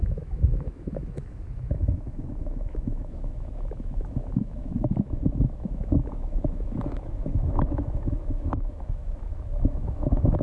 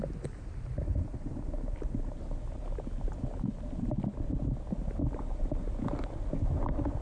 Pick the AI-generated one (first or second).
first